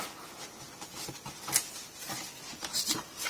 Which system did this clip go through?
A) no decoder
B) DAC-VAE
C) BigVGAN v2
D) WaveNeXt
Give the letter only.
A